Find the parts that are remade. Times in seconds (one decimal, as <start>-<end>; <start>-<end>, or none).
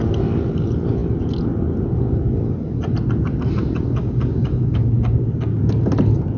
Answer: 4.0-5.6